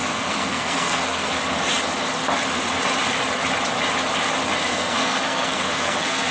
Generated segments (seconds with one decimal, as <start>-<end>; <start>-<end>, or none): 0.0-1.3; 4.7-6.3